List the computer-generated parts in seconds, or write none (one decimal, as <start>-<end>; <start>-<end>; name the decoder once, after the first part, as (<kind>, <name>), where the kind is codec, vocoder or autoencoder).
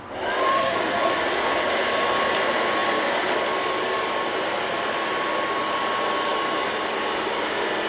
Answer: 0.5-1.1 (autoencoder, DAC-VAE)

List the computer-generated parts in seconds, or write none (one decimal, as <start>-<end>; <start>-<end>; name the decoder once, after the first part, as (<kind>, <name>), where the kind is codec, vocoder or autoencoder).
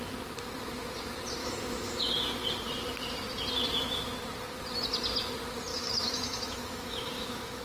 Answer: 1.4-2.0 (autoencoder, DAC-VAE); 5.7-7.6